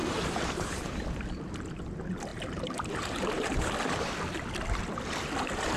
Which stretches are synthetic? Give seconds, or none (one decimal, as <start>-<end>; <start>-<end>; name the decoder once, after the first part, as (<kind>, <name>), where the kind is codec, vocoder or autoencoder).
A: 0.0-1.4 (vocoder, BigVGAN v2); 2.3-3.7